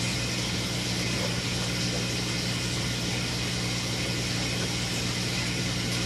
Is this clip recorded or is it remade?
recorded